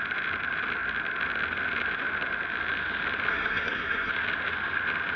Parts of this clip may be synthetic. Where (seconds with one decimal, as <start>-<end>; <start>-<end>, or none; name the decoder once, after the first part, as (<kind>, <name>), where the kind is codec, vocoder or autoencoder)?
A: 3.3-4.1 (codec, SNAC)